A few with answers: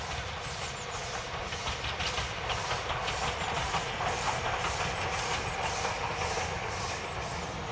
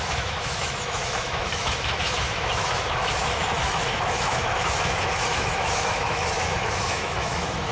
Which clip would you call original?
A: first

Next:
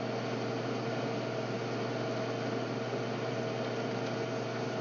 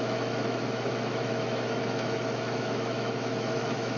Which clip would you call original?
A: first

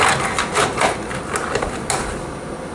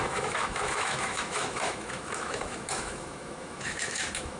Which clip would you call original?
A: first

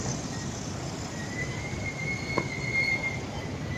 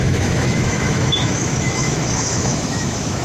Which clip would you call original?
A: first